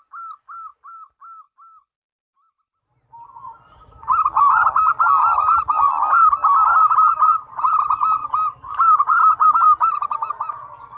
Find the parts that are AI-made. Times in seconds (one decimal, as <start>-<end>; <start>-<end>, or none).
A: none